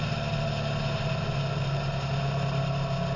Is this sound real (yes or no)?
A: yes